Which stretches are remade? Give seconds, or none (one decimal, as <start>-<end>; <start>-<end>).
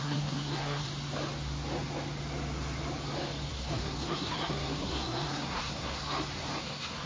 0.0-0.9; 3.5-6.0; 6.6-7.1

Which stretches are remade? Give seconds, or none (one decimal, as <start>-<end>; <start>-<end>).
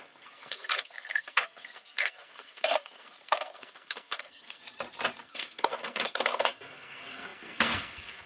0.0-4.6; 5.2-8.3